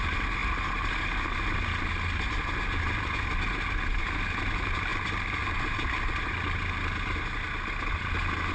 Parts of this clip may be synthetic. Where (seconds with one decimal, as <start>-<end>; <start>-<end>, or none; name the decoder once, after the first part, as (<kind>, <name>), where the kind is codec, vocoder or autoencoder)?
none